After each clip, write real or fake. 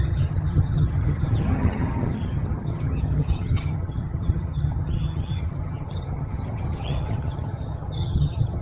fake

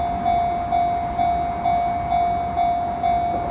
real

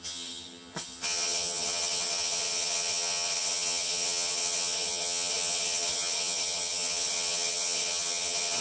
fake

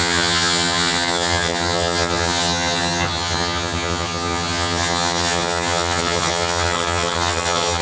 fake